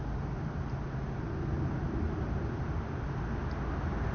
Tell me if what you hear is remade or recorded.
recorded